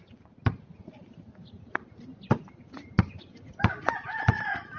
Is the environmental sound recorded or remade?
recorded